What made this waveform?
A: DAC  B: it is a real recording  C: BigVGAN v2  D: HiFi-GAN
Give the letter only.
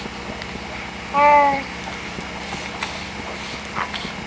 B